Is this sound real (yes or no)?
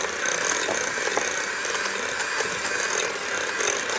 yes